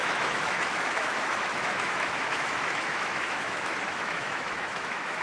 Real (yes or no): no